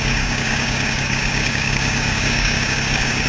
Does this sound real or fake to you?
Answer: fake